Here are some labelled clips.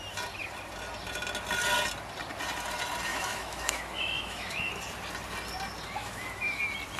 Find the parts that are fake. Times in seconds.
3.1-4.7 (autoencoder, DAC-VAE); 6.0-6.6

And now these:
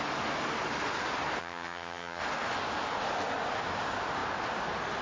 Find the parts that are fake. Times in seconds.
1.4-2.2 (vocoder, HiFi-GAN)

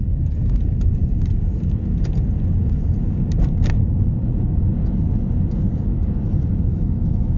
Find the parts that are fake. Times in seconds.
6.7-7.4 (autoencoder, DAC-VAE)